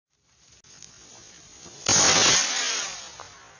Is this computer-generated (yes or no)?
no